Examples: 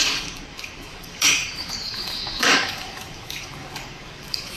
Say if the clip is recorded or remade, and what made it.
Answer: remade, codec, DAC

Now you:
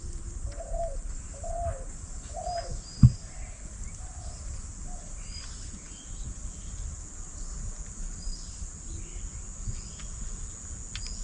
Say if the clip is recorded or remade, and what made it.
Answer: recorded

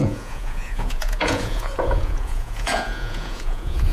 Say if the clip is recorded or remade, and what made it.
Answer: remade, vocoder, Vocos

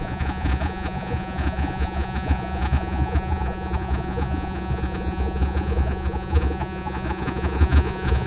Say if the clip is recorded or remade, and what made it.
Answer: remade, vocoder, Vocos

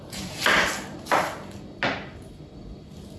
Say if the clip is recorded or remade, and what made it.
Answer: recorded